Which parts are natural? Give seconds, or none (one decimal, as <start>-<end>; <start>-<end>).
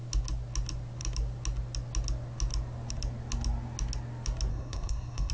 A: 0.0-4.5